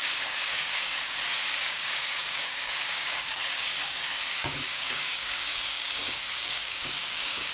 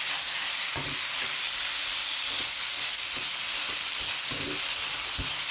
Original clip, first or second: second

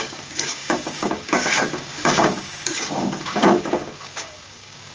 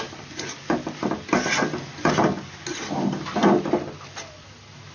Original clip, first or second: second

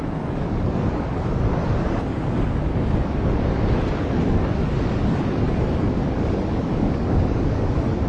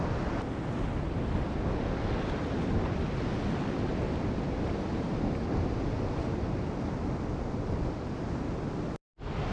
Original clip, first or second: second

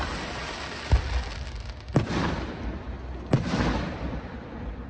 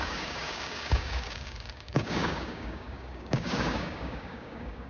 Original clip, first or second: first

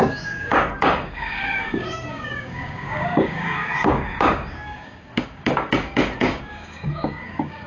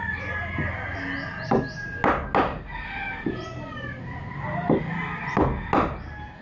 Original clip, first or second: second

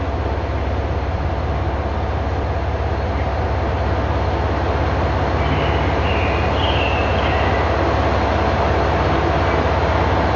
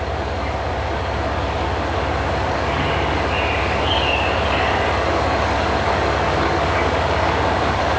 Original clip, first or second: first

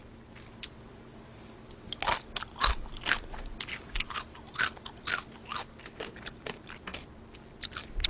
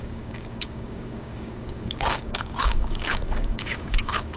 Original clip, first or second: first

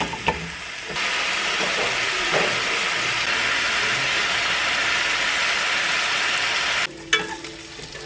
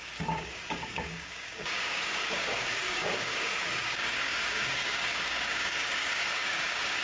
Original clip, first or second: first